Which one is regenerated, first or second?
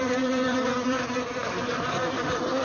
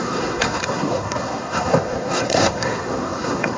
second